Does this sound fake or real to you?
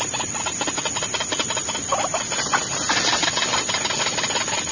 real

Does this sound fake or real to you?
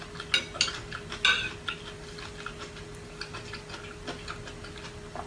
real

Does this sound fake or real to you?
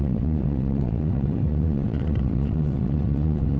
fake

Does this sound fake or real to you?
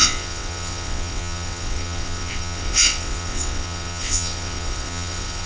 fake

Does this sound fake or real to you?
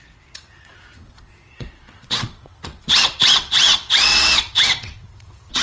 fake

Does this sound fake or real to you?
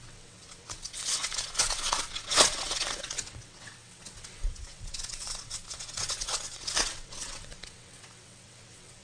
fake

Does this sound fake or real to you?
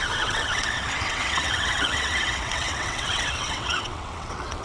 fake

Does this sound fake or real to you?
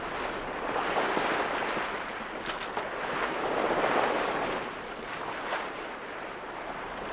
real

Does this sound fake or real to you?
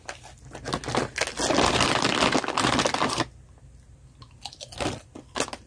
real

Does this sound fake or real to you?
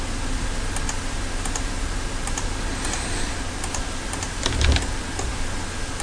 real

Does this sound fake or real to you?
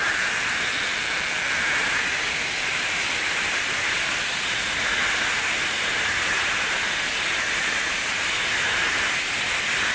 real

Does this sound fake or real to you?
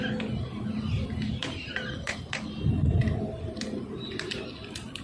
real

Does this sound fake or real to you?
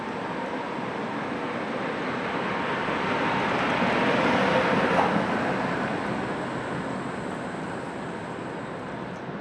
real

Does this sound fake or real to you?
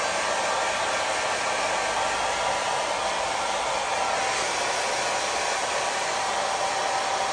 real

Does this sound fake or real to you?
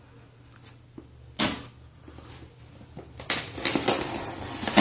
real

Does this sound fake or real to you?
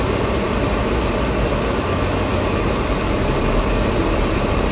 real